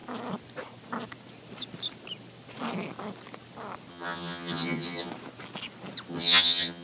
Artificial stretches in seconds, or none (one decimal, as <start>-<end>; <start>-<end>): 3.9-5.1; 6.1-6.8